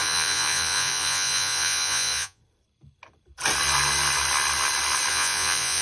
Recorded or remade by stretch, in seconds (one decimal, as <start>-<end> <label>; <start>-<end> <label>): 0.0-2.4 remade; 2.4-5.1 recorded; 5.1-5.8 remade